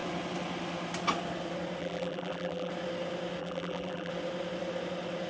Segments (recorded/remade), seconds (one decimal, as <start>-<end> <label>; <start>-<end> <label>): 0.0-1.8 recorded; 1.8-2.7 remade; 2.7-3.4 recorded; 3.4-4.1 remade; 4.1-5.3 recorded